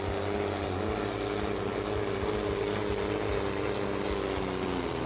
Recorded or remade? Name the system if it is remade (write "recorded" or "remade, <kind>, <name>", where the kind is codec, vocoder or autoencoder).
recorded